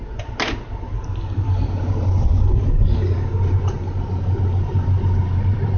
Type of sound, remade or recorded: recorded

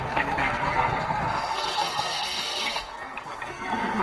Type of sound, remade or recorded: remade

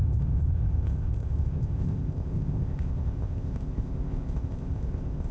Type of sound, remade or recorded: remade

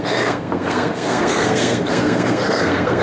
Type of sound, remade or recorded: remade